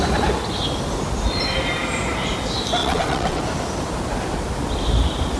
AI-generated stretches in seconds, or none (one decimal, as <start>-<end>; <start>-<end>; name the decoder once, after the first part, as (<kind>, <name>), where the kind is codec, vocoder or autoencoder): 2.8-3.4 (vocoder, WaveNeXt)